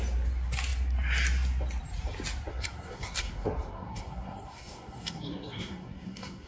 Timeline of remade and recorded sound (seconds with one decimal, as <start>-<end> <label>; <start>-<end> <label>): 0.0-2.5 recorded; 2.5-6.5 remade